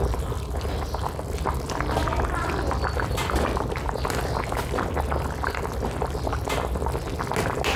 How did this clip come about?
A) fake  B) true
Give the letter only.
B